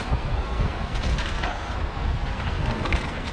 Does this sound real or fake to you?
fake